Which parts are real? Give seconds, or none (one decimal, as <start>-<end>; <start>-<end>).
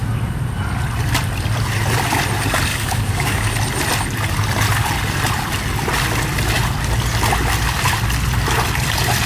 0.0-2.7; 3.5-9.3